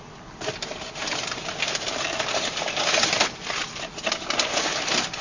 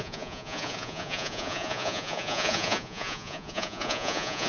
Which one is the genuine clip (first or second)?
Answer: first